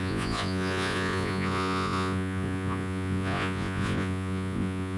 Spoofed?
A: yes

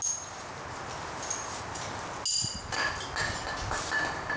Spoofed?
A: no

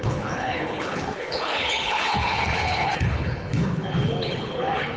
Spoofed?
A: yes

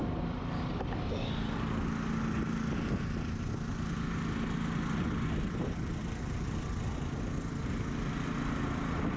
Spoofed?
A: no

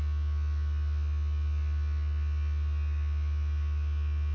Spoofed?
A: no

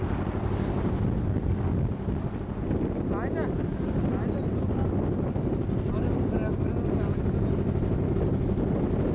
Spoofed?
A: no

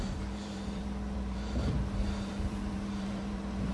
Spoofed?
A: yes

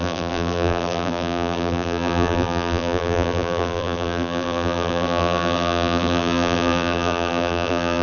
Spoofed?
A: yes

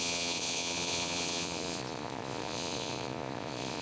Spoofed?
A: yes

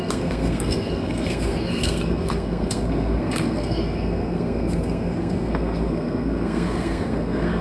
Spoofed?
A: yes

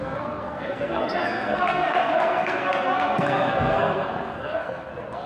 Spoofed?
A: yes